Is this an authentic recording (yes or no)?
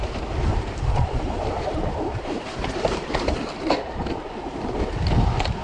no